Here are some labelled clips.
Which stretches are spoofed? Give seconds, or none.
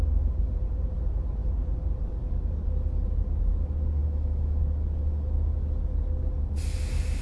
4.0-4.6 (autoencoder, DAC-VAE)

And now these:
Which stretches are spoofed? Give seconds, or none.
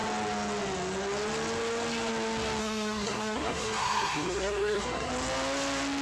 2.6-5.1 (codec, SNAC)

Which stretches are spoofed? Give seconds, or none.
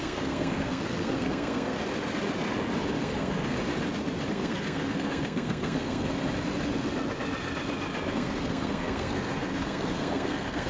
0.0-1.8 (codec, SNAC); 3.0-3.6; 4.3-6.2; 8.1-10.7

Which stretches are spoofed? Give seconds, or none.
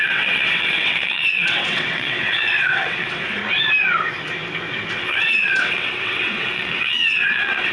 0.0-3.4 (vocoder, WaveNeXt); 4.9-7.7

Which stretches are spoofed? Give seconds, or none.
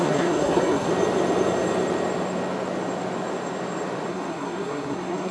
0.0-0.9 (codec, SNAC); 4.1-5.3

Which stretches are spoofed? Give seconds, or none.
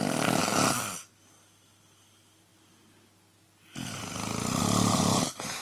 0.0-0.4 (vocoder, BigVGAN v2); 1.8-2.5; 4.6-5.6